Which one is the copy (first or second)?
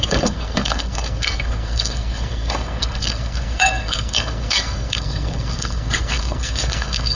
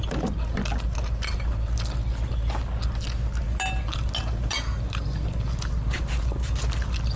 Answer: first